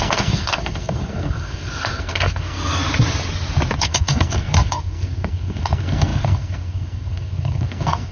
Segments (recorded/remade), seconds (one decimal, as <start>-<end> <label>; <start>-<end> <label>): 0.0-2.8 remade; 2.8-3.8 recorded; 3.8-8.1 remade